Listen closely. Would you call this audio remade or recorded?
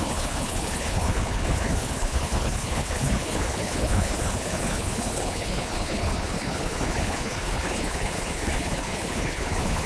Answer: remade